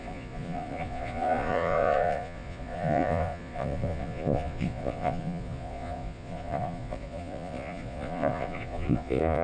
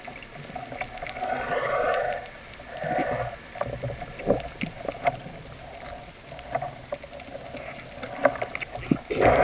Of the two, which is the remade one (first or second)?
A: first